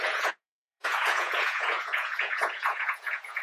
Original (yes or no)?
no